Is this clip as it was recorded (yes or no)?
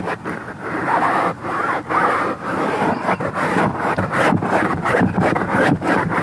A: no